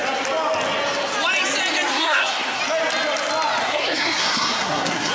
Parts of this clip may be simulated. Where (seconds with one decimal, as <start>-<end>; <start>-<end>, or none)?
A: 1.9-2.6; 3.6-5.1